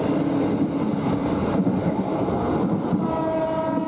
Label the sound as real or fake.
real